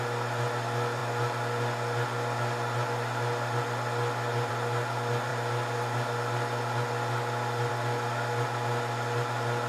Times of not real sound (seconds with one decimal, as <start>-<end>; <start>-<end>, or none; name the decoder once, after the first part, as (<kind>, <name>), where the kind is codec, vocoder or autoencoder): none